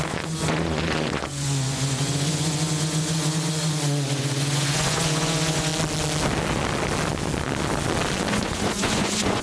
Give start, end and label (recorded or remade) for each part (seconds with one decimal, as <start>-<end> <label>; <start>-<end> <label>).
0.0-5.7 remade; 5.7-8.3 recorded; 8.3-9.4 remade